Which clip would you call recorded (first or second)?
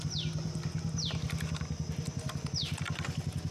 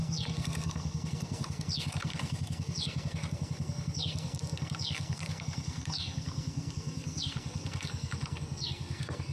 first